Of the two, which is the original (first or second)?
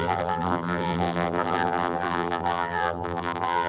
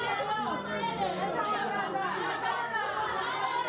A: second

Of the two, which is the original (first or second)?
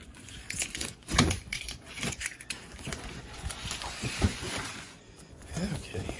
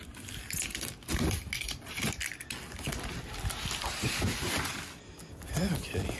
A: second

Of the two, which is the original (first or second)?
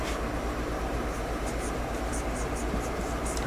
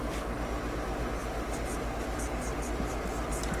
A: second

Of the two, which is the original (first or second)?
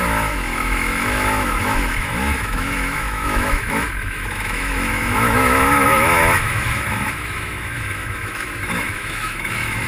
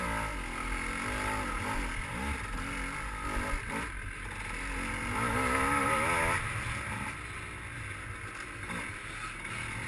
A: second